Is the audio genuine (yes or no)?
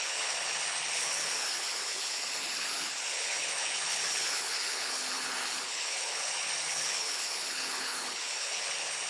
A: no